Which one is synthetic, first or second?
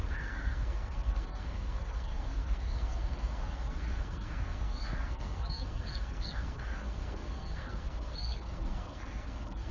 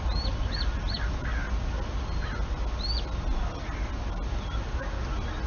first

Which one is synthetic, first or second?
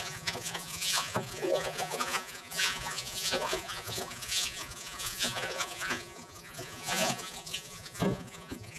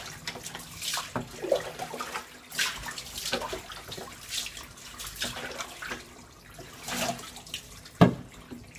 first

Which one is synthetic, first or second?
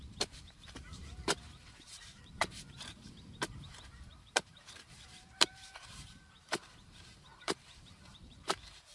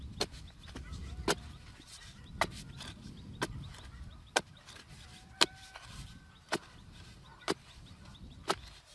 first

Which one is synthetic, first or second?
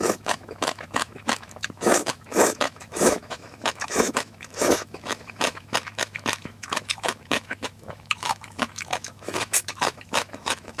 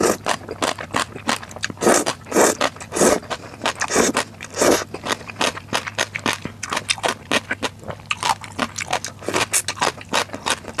first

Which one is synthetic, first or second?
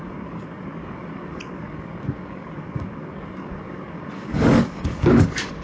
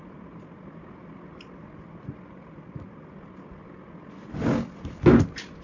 first